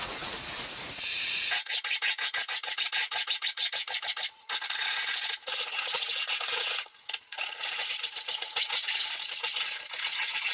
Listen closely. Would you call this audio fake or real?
fake